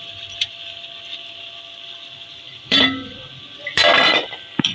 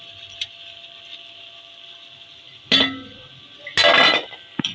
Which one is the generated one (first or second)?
first